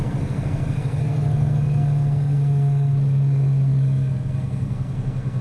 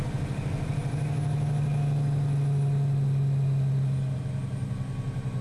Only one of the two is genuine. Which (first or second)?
second